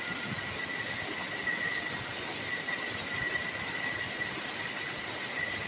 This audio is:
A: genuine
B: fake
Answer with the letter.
A